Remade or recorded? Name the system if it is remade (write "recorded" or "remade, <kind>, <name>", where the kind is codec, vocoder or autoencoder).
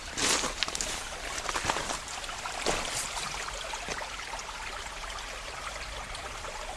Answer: recorded